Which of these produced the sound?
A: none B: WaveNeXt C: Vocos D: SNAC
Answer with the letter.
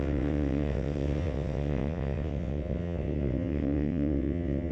B